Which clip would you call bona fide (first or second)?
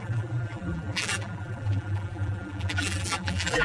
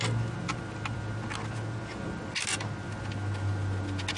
second